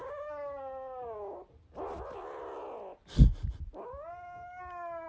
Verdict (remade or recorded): recorded